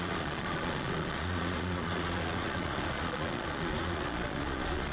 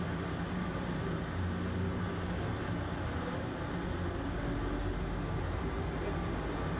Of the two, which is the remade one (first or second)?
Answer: first